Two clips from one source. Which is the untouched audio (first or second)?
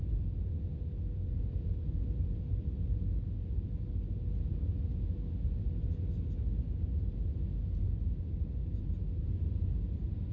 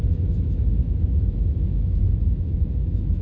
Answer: first